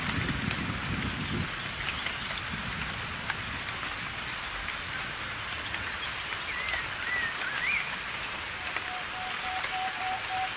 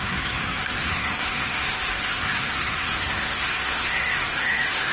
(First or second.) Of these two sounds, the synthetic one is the second